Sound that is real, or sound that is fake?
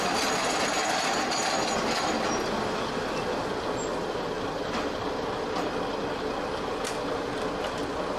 real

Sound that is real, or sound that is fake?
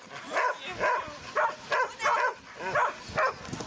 real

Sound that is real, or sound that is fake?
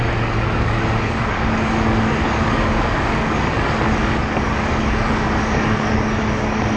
fake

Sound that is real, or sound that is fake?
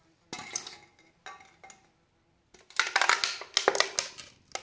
real